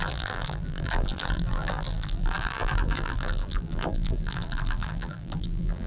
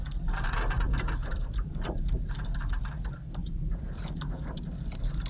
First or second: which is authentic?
second